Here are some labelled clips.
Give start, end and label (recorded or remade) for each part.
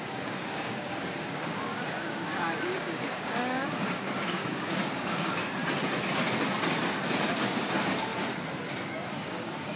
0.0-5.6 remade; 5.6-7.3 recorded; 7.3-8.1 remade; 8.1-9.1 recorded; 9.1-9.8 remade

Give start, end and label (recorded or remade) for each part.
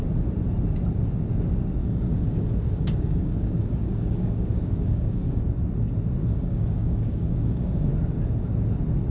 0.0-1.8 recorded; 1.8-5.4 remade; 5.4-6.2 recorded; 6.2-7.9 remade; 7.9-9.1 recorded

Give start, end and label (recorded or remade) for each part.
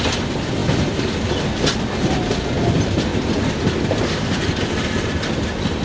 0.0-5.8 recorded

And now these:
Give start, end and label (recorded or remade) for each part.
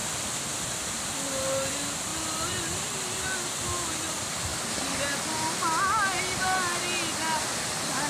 0.0-8.1 recorded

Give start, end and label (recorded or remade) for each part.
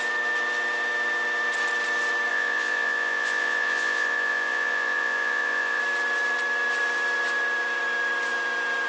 0.0-2.3 recorded; 2.3-5.8 remade; 5.8-8.9 recorded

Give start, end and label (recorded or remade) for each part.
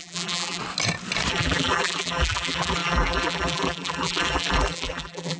0.0-0.6 remade; 0.6-1.3 recorded; 1.3-5.4 remade